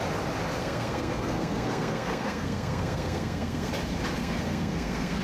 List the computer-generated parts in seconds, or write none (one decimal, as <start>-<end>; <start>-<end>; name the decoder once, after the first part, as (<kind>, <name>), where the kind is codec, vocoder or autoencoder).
0.6-3.7 (codec, SNAC); 4.2-5.2